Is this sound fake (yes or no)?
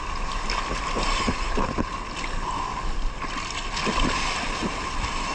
no